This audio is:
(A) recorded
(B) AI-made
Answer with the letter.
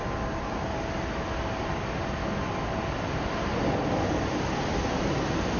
A